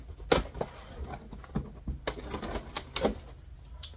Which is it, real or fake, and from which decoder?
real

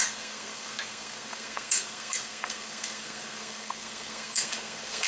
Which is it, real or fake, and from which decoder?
fake, codec, SNAC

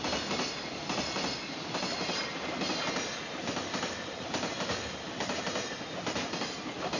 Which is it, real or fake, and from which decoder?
real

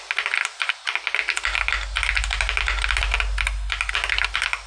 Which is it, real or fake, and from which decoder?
real